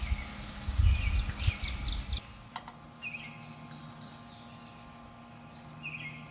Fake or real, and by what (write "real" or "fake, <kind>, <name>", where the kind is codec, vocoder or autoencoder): real